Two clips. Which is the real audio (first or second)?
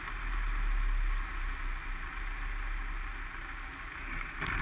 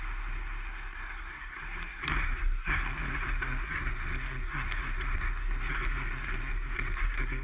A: first